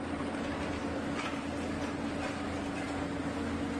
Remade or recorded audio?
recorded